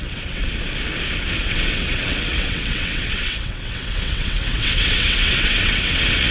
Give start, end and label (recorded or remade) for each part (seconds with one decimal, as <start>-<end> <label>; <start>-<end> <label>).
0.0-0.4 remade; 0.4-1.4 recorded; 1.4-6.3 remade